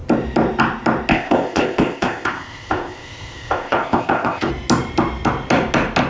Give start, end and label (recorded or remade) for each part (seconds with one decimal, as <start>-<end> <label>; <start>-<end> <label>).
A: 0.0-1.1 recorded; 1.1-4.5 remade; 4.5-6.1 recorded